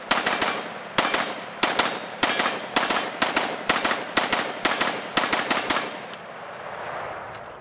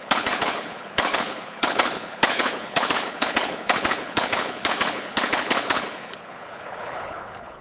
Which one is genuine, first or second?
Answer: first